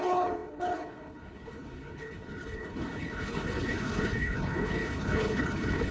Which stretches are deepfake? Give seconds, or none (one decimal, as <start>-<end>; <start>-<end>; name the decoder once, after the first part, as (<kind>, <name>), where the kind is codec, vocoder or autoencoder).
0.0-5.9 (codec, HILCodec)